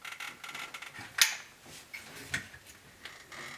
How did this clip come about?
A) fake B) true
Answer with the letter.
B